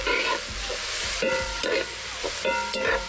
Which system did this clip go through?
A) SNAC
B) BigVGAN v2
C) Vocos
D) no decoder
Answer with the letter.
D